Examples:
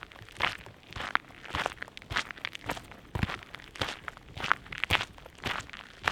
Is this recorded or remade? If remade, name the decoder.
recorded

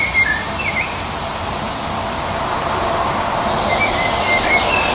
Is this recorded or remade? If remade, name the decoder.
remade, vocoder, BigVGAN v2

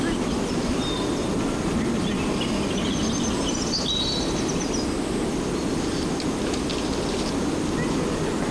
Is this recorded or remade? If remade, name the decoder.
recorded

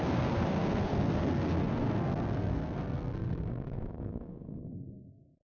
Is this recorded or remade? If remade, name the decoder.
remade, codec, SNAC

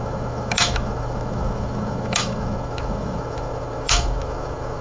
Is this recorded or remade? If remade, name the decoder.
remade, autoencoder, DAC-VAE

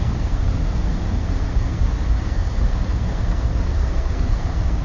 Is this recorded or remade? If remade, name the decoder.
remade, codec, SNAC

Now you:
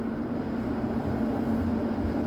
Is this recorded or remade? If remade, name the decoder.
recorded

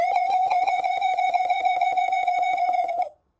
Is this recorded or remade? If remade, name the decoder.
remade, vocoder, Vocos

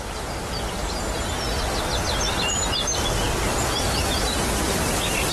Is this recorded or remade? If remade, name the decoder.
recorded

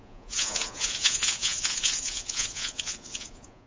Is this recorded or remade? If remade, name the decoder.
remade, vocoder, Vocos